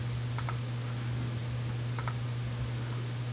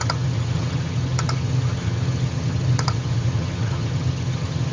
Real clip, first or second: first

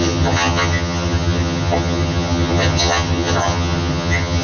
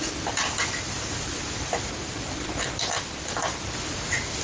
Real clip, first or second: second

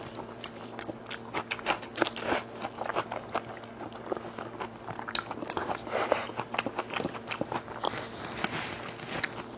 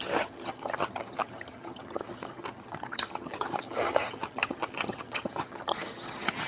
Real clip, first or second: first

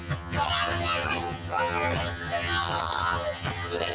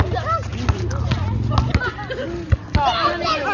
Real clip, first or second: second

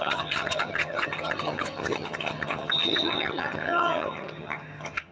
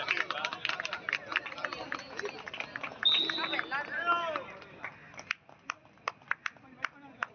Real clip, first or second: second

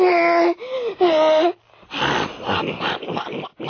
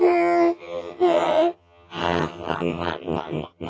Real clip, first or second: first